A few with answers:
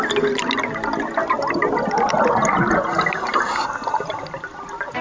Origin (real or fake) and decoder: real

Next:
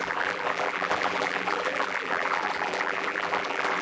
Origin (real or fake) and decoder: fake, vocoder, BigVGAN v2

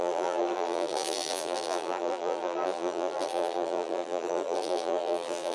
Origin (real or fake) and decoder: fake, vocoder, BigVGAN v2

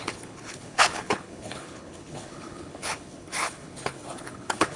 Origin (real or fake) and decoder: fake, codec, HILCodec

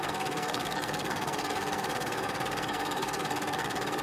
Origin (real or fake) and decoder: fake, codec, SNAC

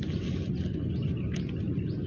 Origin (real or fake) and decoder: real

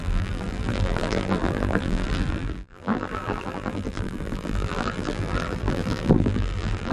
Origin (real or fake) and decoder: fake, vocoder, BigVGAN v2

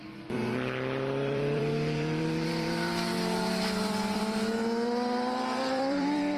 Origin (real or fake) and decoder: fake, vocoder, BigVGAN v2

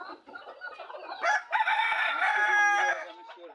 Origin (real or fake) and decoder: real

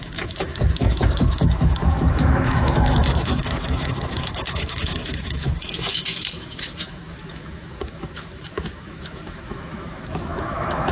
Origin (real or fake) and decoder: fake, autoencoder, DAC-VAE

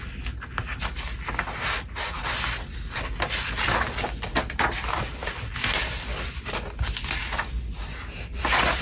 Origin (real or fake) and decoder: real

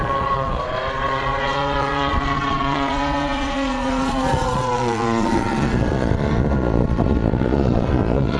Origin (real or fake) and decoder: fake, vocoder, Vocos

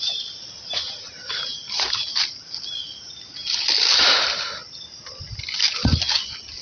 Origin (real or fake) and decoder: real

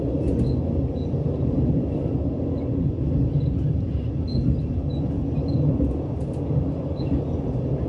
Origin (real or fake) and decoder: real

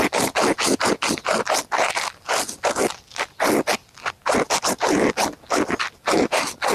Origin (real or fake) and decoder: real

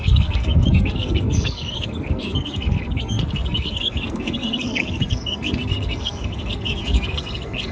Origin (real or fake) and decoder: fake, codec, SNAC